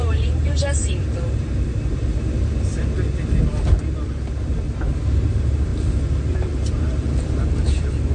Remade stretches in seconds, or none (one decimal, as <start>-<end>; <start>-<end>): 0.0-2.7; 5.3-8.1